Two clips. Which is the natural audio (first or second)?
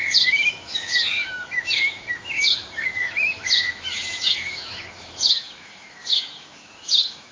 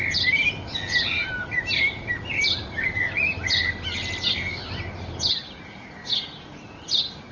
second